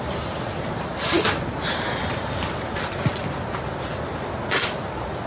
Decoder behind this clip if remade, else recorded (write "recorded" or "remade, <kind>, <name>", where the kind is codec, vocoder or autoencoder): recorded